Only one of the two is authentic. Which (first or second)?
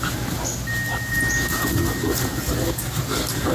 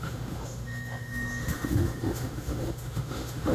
first